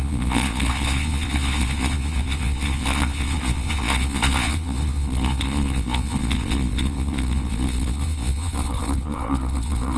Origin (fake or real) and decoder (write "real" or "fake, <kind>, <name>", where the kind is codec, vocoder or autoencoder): fake, vocoder, Vocos